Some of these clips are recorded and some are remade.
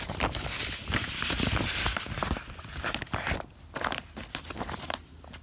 recorded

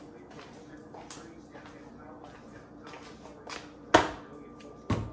recorded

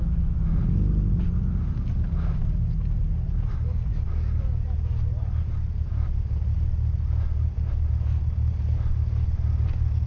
recorded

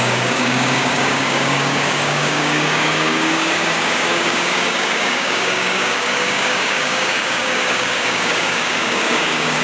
remade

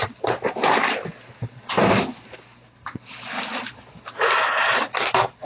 recorded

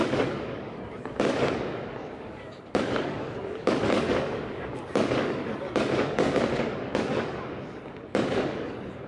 remade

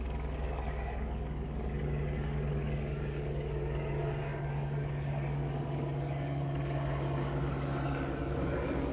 remade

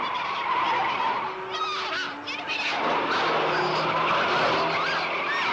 recorded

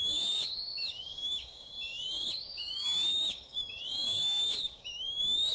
remade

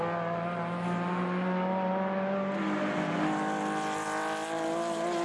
recorded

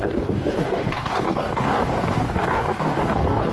remade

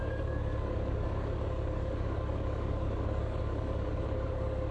remade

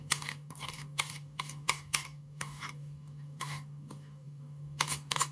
remade